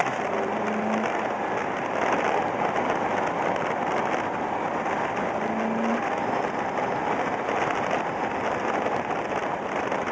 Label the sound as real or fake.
real